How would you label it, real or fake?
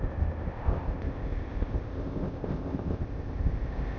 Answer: fake